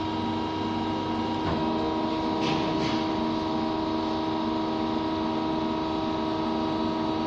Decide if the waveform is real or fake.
real